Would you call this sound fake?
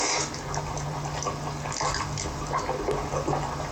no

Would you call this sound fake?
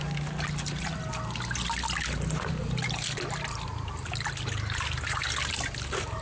no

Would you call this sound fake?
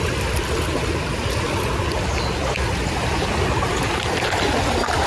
no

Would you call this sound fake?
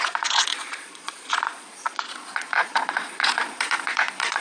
yes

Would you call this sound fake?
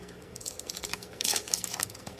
yes